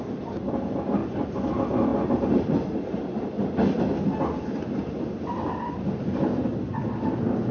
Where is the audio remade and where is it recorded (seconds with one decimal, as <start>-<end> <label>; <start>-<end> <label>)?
0.0-7.5 recorded